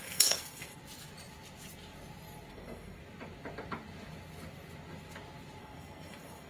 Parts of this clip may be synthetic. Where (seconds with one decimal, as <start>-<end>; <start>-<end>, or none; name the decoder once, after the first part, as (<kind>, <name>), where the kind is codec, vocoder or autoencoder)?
0.0-0.8 (codec, SNAC); 2.5-3.0; 5.6-6.5